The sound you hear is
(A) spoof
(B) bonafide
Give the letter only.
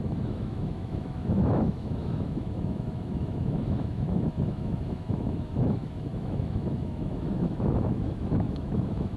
A